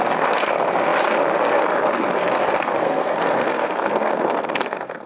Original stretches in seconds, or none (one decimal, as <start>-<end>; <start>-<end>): 0.0-2.8